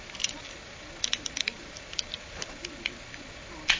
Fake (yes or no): no